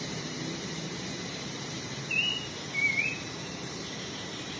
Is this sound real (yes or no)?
yes